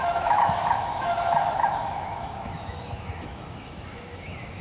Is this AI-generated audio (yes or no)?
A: yes